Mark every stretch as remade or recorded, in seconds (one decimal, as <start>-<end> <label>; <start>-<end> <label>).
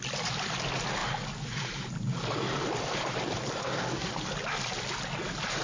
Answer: 0.0-3.6 recorded; 3.6-4.1 remade; 4.1-5.6 recorded